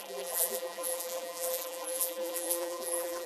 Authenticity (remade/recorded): remade